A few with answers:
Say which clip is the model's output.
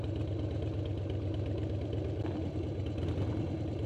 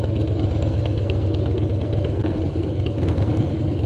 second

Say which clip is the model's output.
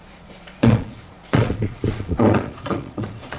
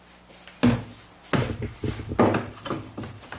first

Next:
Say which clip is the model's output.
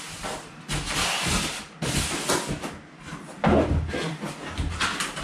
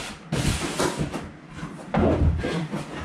second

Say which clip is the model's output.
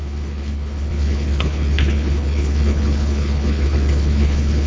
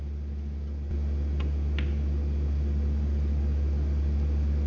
first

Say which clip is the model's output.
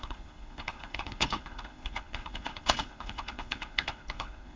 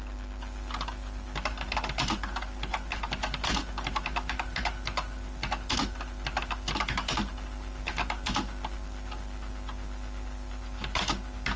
first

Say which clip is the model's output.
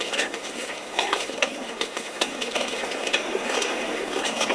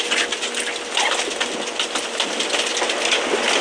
first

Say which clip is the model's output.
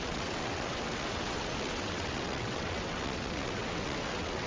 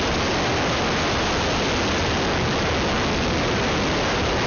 first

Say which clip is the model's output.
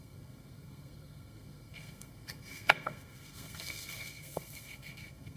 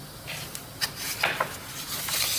first